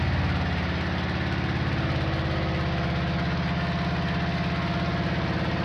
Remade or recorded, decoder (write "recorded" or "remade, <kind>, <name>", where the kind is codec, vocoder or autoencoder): recorded